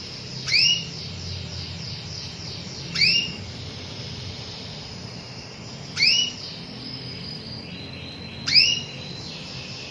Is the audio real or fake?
fake